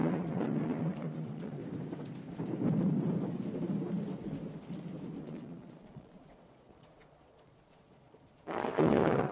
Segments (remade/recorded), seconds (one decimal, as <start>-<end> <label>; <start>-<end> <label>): 0.0-1.6 remade; 1.6-5.2 recorded; 5.2-9.3 remade